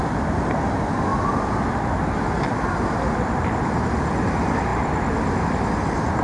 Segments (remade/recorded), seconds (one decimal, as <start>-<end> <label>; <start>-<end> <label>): 0.0-6.2 recorded